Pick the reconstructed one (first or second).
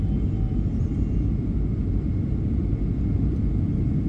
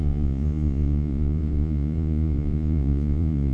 second